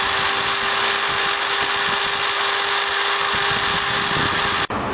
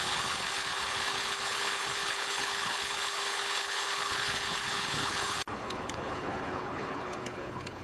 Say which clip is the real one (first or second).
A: first